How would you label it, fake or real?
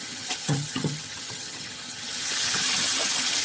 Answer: fake